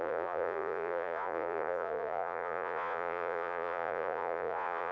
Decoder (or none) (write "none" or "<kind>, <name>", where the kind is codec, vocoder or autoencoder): vocoder, Vocos